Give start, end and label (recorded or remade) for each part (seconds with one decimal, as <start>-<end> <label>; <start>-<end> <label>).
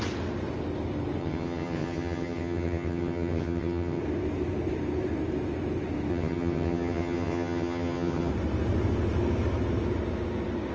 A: 0.0-1.2 recorded; 1.2-4.0 remade; 4.0-6.1 recorded; 6.1-8.3 remade; 8.3-10.7 recorded